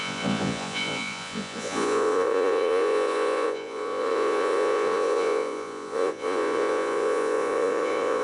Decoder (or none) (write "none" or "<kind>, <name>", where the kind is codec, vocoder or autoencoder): vocoder, Vocos